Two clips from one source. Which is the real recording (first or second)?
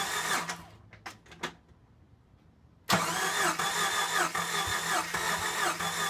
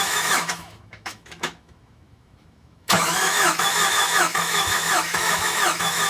first